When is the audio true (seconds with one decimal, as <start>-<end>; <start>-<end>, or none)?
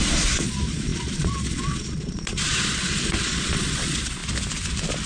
4.2-5.1